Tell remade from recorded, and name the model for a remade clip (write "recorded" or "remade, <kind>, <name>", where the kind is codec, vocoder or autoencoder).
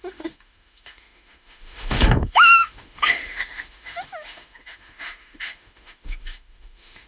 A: remade, autoencoder, DAC-VAE